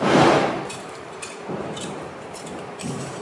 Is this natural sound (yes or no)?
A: no